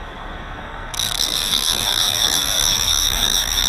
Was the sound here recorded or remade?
remade